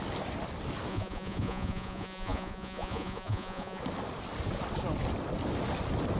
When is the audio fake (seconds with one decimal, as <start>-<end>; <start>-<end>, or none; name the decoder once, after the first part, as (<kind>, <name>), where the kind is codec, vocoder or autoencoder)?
0.9-3.8 (vocoder, Vocos)